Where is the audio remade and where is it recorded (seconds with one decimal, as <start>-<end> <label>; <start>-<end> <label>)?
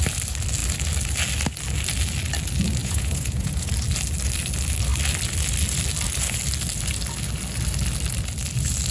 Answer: 0.0-2.8 recorded; 2.8-3.7 remade; 3.7-8.9 recorded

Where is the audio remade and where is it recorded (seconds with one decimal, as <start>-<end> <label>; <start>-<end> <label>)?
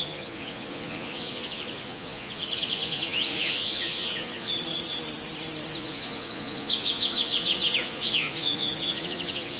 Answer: 0.0-4.5 remade; 4.5-5.7 recorded; 5.7-9.6 remade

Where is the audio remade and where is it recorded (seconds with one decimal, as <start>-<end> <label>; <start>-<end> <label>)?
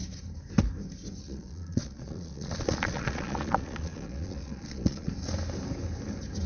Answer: 0.0-1.2 recorded; 1.2-5.1 remade; 5.1-6.5 recorded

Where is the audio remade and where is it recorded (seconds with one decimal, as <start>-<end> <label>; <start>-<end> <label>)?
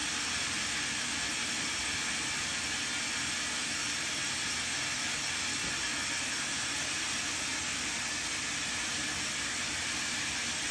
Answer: 0.0-10.7 recorded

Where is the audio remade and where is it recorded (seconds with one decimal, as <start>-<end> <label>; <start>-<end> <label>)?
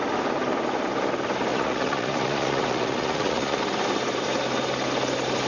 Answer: 0.0-1.5 recorded; 1.5-3.6 remade; 3.6-5.5 recorded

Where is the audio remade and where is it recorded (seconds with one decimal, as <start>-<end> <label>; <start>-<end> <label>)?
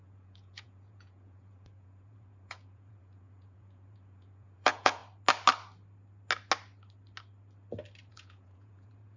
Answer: 0.0-5.0 remade; 5.0-8.1 recorded; 8.1-9.2 remade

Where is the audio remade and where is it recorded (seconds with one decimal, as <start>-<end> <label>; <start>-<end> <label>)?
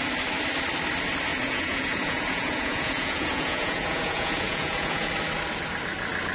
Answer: 0.0-1.3 recorded; 1.3-5.1 remade; 5.1-6.3 recorded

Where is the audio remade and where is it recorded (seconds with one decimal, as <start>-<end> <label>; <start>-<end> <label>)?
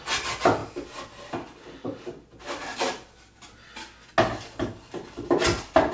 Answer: 0.0-5.9 recorded